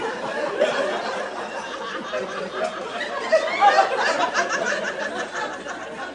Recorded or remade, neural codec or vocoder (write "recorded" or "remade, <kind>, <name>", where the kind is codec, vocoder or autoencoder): recorded